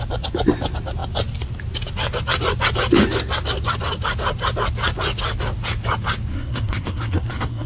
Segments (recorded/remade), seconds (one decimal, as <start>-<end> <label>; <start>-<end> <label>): 0.0-6.3 recorded; 6.3-7.7 remade